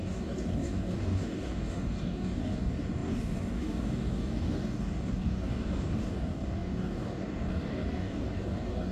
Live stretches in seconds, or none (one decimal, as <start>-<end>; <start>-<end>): none